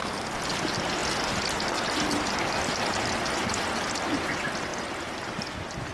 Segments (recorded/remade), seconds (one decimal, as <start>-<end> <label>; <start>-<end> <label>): 0.0-5.9 recorded